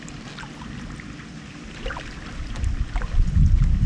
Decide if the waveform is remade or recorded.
recorded